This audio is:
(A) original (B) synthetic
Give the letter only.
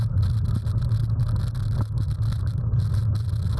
A